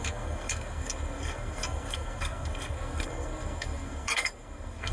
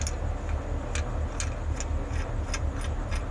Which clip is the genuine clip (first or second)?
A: second